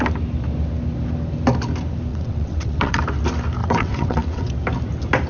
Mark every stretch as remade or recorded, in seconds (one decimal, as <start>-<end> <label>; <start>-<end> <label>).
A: 0.0-2.1 recorded; 2.1-3.0 remade; 3.0-3.6 recorded; 3.6-4.5 remade; 4.5-5.3 recorded